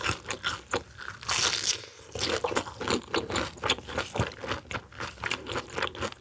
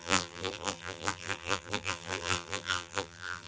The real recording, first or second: first